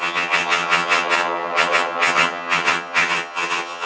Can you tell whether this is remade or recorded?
remade